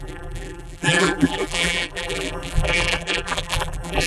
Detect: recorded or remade remade